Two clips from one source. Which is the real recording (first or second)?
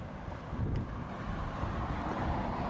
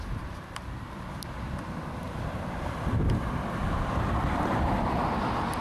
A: first